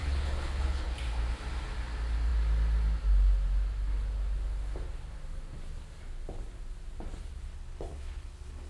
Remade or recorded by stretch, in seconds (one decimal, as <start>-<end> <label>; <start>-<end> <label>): 0.0-0.9 remade; 0.9-7.5 recorded; 7.5-8.7 remade